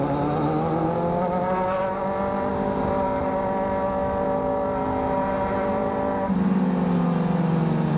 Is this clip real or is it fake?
real